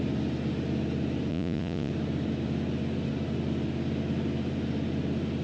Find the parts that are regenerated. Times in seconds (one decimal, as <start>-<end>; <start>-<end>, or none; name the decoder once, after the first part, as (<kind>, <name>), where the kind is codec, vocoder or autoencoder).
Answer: 1.3-1.9 (vocoder, Vocos)